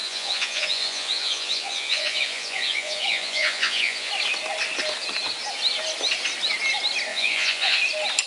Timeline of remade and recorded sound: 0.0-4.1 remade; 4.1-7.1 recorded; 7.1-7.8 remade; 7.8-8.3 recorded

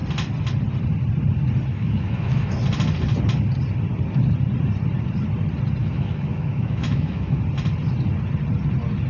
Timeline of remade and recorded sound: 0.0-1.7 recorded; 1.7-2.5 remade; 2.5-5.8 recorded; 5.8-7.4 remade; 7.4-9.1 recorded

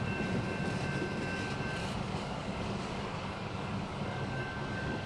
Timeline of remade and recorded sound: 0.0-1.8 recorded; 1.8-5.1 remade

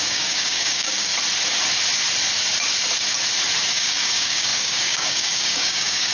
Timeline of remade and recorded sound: 0.0-1.1 remade; 1.1-3.7 recorded; 3.7-6.1 remade